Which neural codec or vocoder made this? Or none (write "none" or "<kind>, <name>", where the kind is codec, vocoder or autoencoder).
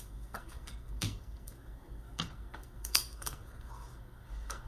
codec, SNAC